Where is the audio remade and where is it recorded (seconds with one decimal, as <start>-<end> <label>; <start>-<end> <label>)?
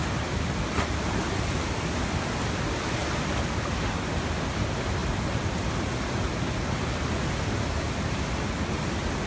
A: 0.0-9.3 recorded